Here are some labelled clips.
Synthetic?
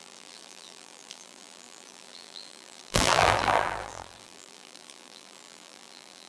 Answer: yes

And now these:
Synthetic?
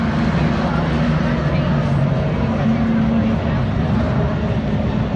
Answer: no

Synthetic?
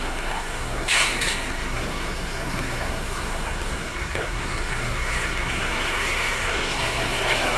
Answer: yes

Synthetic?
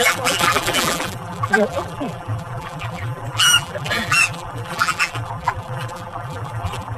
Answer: yes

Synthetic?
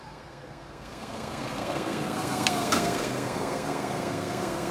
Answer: yes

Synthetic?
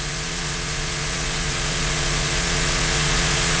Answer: yes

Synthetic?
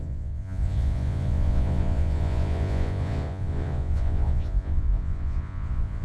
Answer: yes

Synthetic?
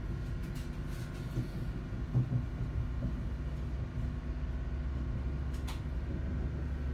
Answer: no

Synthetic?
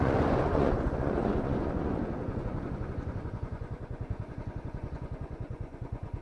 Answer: yes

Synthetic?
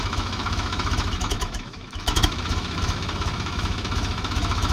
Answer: yes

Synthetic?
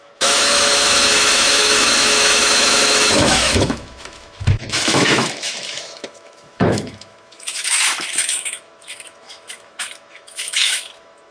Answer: yes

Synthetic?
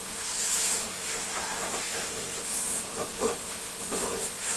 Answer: yes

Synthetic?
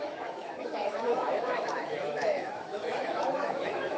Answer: yes